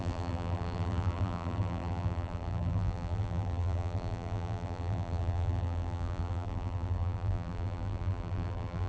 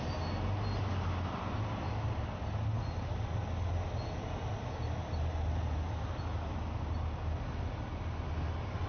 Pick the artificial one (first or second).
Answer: first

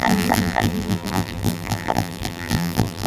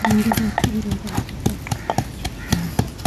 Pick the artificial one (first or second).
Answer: first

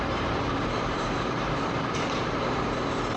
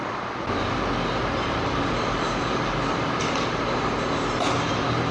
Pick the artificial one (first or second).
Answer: first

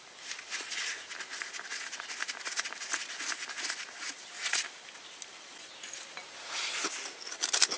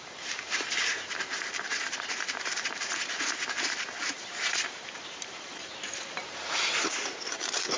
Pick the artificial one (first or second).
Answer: second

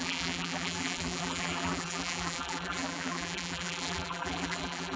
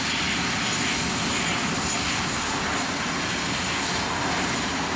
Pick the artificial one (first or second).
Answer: first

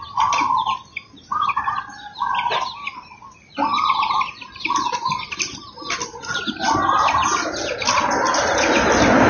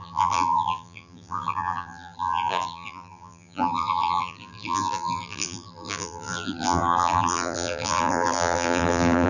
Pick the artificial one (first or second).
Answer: second